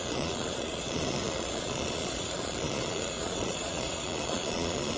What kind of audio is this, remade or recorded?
remade